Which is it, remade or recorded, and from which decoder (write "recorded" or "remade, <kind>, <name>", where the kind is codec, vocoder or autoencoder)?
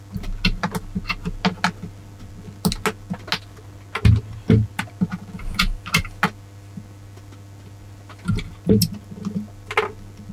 recorded